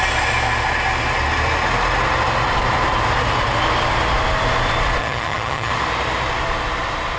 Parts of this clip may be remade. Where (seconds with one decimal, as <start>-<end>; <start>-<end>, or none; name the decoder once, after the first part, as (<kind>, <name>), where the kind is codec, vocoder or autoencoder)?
5.0-5.7 (vocoder, HiFi-GAN)